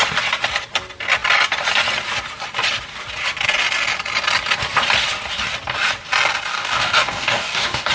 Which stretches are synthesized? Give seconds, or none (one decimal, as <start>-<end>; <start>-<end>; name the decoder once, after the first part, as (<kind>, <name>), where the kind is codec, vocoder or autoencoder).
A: 6.5-7.9 (codec, DAC)